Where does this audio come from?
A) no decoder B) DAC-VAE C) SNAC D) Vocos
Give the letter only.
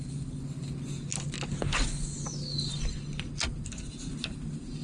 A